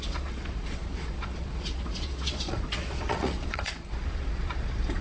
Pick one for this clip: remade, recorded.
remade